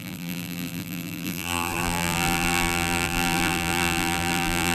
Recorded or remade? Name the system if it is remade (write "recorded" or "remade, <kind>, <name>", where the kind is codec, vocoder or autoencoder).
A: remade, vocoder, BigVGAN v2